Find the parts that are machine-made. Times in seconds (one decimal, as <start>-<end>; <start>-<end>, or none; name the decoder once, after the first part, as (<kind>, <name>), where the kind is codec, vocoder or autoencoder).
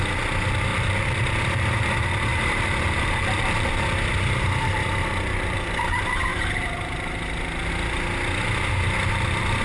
0.7-1.9 (vocoder, BigVGAN v2); 2.3-3.7